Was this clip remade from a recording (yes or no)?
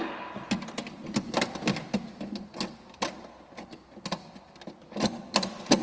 no